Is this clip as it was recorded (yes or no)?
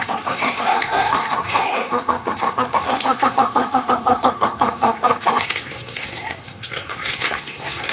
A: no